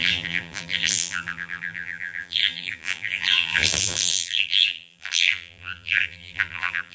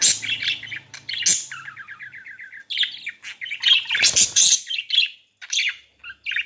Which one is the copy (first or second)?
first